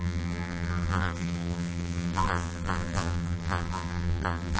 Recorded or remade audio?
remade